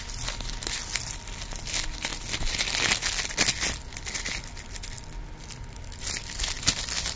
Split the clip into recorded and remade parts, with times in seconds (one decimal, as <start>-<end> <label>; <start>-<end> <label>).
0.0-7.2 recorded